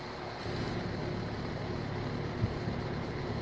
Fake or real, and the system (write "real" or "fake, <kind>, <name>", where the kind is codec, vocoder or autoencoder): real